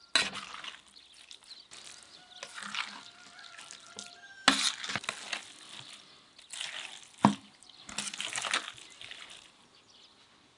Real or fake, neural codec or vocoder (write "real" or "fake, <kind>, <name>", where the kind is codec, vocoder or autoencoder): real